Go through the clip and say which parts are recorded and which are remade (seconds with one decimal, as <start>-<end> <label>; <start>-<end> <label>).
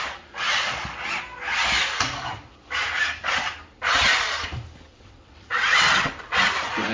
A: 0.0-4.9 recorded; 4.9-6.1 remade; 6.1-6.9 recorded